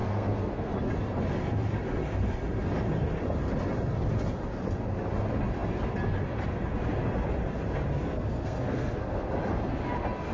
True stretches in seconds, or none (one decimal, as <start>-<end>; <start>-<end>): 0.7-8.0; 9.3-10.3